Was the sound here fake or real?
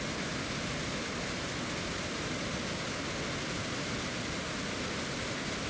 real